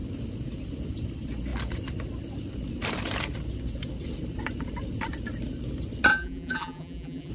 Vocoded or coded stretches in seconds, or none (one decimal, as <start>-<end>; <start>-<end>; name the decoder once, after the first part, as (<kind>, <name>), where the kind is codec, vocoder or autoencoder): 6.1-7.3 (vocoder, BigVGAN v2)